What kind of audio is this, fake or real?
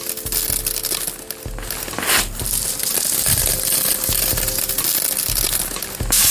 real